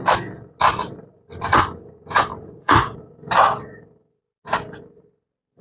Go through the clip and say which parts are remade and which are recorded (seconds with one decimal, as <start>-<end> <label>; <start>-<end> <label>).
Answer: 0.0-2.3 recorded; 2.3-3.0 remade; 3.0-5.6 recorded

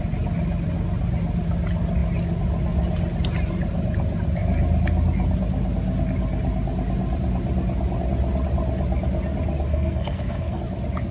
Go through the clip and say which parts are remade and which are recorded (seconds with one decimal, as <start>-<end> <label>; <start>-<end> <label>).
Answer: 0.0-9.7 recorded; 9.7-10.6 remade; 10.6-11.1 recorded

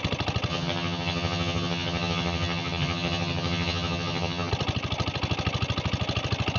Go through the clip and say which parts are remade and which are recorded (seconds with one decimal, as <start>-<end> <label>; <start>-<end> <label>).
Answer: 0.0-0.5 recorded; 0.5-4.5 remade; 4.5-6.6 recorded